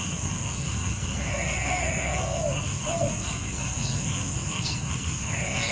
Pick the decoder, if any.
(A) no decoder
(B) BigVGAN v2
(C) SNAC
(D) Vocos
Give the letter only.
C